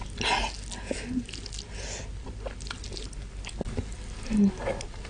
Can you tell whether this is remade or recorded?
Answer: recorded